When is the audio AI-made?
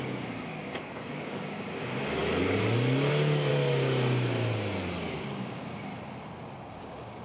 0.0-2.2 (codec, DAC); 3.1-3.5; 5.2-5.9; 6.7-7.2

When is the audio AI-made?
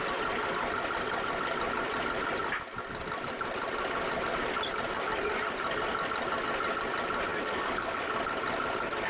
7.3-8.1 (codec, DAC)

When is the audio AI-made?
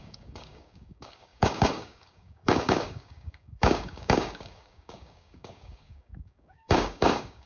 0.0-7.5 (codec, DAC)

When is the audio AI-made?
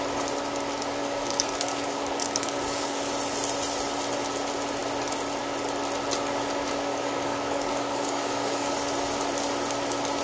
1.0-3.0 (codec, DAC); 6.9-8.7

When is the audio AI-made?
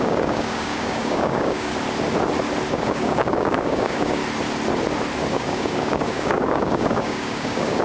0.0-1.7 (codec, DAC); 2.7-4.2; 5.3-7.8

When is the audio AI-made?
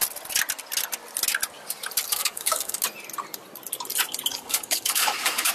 2.1-2.8 (codec, DAC); 4.3-5.5